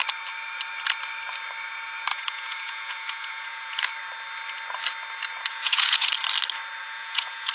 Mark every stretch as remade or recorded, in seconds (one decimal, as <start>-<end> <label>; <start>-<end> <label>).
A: 0.0-2.1 recorded; 2.1-3.9 remade; 3.9-5.5 recorded; 5.5-6.1 remade; 6.1-6.8 recorded; 6.8-7.5 remade